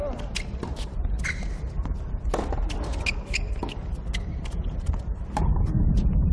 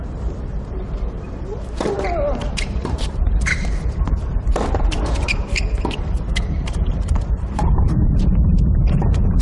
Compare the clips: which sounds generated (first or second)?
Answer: second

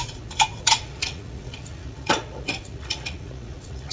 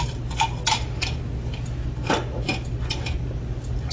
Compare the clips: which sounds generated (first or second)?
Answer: first